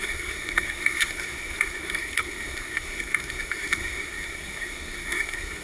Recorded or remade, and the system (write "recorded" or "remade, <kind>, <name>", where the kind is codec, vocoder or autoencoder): remade, codec, SNAC